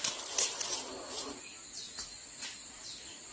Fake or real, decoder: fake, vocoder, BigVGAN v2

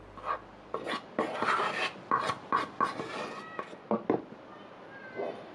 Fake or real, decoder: real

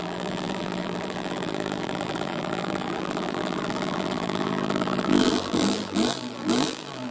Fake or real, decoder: fake, vocoder, BigVGAN v2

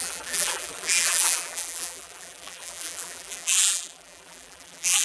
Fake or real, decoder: fake, vocoder, BigVGAN v2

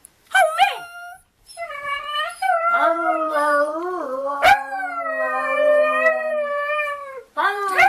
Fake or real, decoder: fake, vocoder, BigVGAN v2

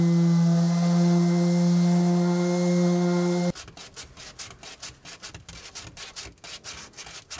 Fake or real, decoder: real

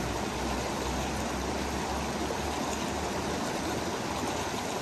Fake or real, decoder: real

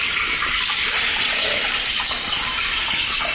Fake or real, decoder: fake, vocoder, BigVGAN v2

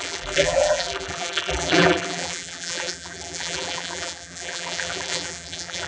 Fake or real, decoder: fake, vocoder, BigVGAN v2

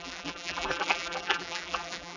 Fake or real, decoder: fake, vocoder, BigVGAN v2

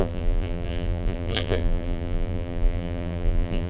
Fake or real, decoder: fake, vocoder, BigVGAN v2